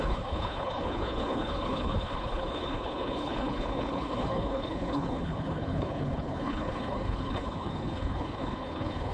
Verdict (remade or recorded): remade